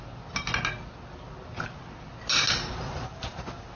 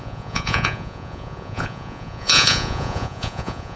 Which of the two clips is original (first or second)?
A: first